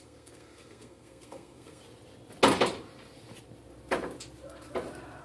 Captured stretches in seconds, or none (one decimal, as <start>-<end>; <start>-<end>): 1.8-5.2